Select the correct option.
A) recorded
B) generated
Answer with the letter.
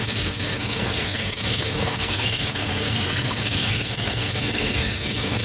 B